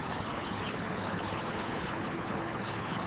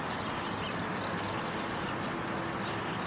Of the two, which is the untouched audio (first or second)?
second